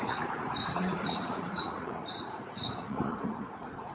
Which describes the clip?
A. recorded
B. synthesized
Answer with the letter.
B